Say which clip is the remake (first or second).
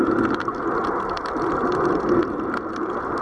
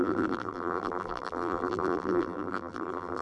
second